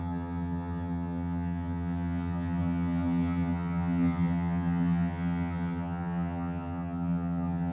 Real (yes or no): no